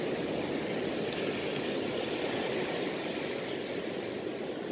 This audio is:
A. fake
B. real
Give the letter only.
B